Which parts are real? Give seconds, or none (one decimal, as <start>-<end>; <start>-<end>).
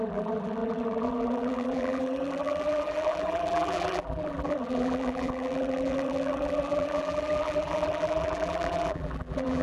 none